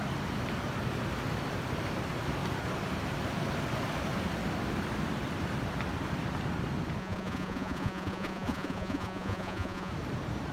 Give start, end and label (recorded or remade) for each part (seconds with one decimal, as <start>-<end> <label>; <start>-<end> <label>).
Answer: 0.0-7.0 recorded; 7.0-9.9 remade; 9.9-10.5 recorded